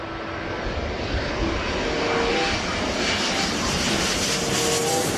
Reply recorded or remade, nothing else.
recorded